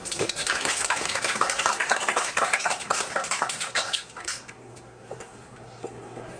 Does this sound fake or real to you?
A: fake